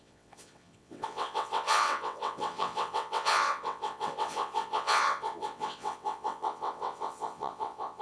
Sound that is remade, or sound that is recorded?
remade